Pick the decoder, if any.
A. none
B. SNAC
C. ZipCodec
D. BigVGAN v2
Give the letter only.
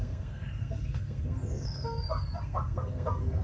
B